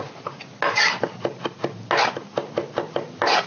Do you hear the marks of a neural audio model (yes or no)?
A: no